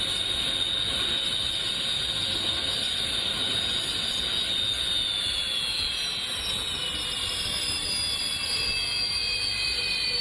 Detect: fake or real real